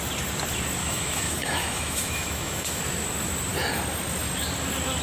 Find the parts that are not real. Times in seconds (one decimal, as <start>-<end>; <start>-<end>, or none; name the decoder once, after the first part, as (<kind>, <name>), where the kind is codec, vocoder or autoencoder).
0.8-2.8 (autoencoder, DAC-VAE)